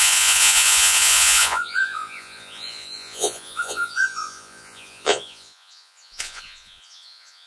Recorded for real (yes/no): no